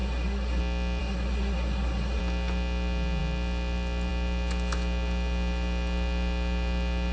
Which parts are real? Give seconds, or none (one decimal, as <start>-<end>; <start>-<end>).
0.6-1.0; 2.2-7.1